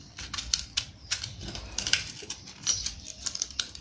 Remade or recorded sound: remade